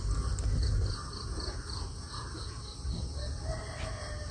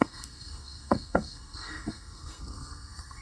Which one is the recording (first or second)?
first